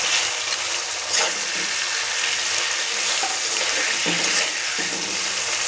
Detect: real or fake real